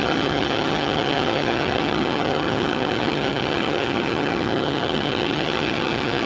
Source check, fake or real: fake